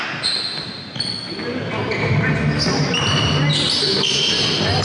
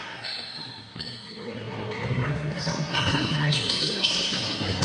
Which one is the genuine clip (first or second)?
first